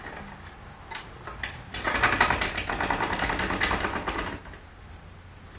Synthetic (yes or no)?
no